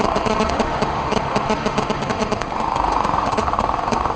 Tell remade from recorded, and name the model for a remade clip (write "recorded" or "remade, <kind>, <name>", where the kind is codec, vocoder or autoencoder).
remade, autoencoder, DAC-VAE